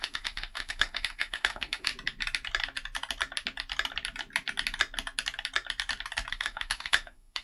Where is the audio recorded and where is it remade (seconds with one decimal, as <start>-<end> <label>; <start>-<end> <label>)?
0.0-1.9 remade; 1.9-6.3 recorded; 6.3-7.4 remade